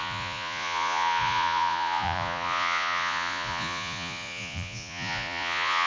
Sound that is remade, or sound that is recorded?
remade